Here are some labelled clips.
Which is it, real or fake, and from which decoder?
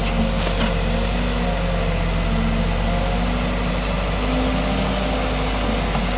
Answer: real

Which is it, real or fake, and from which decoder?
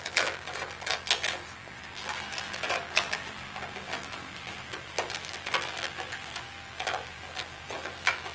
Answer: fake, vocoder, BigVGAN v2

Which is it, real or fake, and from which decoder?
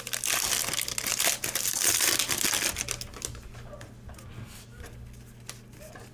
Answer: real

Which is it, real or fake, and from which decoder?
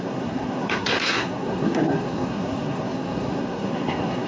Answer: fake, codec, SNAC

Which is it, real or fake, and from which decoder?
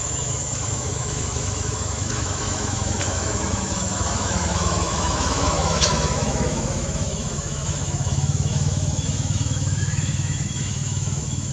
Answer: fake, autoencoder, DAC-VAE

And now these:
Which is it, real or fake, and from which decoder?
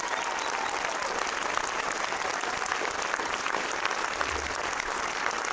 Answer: real